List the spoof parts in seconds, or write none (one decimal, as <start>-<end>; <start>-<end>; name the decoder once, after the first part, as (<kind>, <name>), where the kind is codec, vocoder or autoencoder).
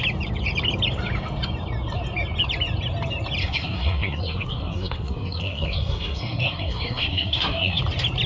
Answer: 3.4-7.8 (codec, SNAC)